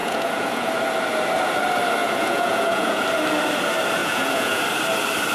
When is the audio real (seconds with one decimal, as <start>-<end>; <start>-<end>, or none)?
0.7-2.0; 3.0-4.0; 4.6-5.3